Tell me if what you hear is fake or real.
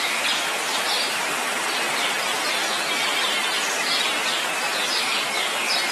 fake